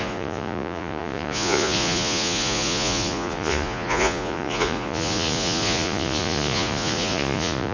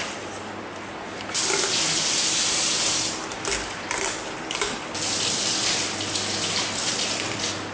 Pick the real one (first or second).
second